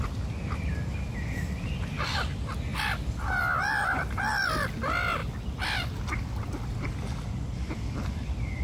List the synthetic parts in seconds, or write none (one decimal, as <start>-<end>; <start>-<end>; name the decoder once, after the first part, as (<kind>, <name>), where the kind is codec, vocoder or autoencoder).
none